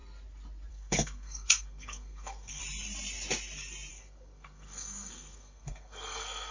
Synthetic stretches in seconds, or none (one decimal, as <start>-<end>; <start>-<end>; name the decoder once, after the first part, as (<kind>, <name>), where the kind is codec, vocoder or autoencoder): 0.7-2.6 (codec, SNAC); 3.9-6.5